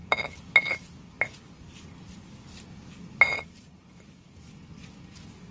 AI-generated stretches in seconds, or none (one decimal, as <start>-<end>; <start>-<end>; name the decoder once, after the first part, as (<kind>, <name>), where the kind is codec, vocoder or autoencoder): 3.3-3.9 (vocoder, BigVGAN v2)